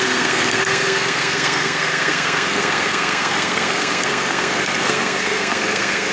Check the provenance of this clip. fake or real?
fake